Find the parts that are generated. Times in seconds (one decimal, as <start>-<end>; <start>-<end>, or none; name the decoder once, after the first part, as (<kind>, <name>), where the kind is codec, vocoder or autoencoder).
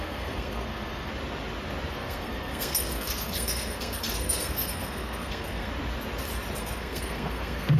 0.0-1.1 (codec, SNAC); 1.9-5.7; 6.6-7.8